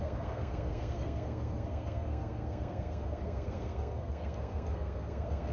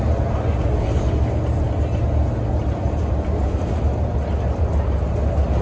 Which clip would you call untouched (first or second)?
second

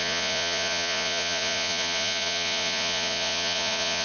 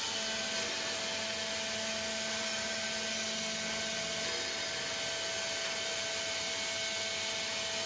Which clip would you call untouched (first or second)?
second